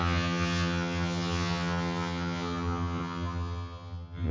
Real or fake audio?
fake